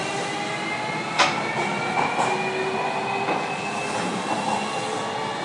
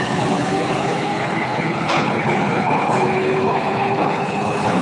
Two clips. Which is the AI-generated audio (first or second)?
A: second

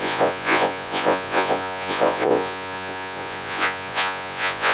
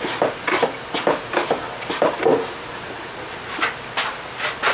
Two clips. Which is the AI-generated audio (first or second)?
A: first